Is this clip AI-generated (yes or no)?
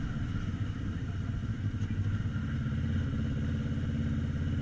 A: no